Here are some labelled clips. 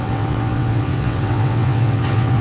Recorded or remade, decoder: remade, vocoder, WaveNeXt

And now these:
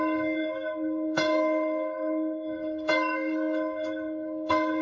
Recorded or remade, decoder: remade, codec, SNAC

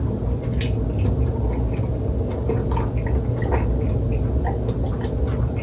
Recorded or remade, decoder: recorded